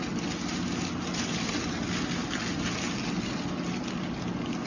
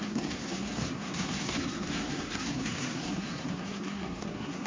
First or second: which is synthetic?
second